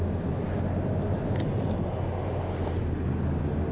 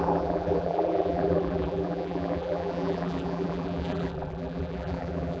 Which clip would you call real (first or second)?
first